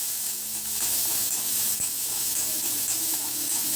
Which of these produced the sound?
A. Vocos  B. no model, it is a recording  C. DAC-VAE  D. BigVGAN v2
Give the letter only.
C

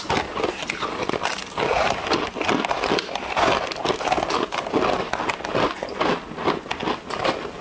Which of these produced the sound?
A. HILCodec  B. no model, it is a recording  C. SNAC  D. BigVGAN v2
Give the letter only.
B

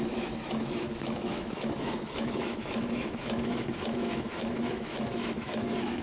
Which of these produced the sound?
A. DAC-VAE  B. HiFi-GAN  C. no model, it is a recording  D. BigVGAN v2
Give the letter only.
A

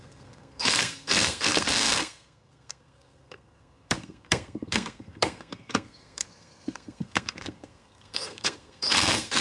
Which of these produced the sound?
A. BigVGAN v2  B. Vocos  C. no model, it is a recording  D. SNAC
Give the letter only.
D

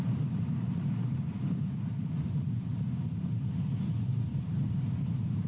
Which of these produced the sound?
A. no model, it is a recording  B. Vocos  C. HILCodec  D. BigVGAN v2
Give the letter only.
D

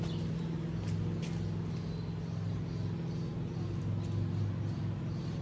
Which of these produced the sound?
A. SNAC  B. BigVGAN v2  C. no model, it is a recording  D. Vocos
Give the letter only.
C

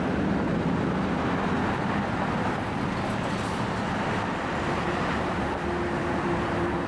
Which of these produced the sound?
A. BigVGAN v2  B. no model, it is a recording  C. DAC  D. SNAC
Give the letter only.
B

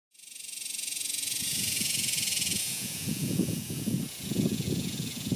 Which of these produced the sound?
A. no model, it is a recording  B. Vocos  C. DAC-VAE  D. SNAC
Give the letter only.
B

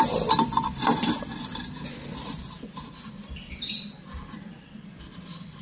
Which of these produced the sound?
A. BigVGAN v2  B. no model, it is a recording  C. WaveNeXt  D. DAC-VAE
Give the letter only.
A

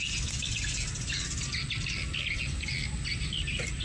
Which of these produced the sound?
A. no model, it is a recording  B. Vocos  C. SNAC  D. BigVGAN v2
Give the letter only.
A